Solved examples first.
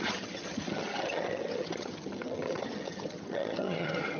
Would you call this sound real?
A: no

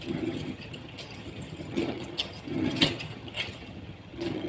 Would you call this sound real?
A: no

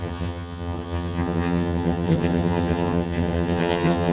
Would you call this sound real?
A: no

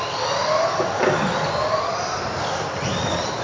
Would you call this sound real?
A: yes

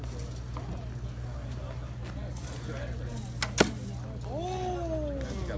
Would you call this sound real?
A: yes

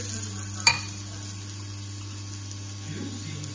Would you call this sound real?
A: yes